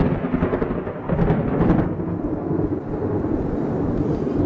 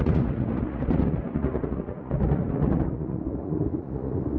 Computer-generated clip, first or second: second